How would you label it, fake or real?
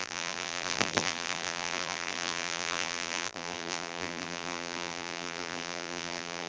fake